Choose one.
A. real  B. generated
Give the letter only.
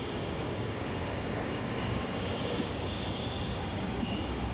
B